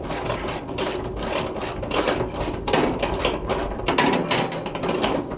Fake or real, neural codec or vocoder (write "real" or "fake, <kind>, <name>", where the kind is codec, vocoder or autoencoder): real